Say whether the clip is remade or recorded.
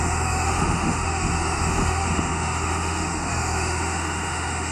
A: remade